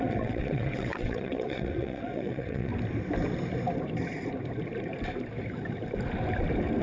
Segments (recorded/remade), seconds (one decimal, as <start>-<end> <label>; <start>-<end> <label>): 0.0-2.7 remade; 2.7-6.8 recorded